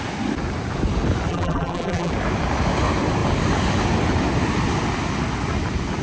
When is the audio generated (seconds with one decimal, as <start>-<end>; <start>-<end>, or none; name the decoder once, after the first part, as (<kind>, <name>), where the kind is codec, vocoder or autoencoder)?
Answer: 1.3-2.1 (vocoder, BigVGAN v2)